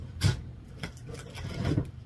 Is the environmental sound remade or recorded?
recorded